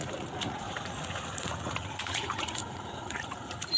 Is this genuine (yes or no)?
no